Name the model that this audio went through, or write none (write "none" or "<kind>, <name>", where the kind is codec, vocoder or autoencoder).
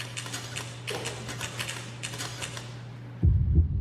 none